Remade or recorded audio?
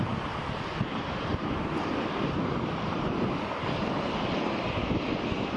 remade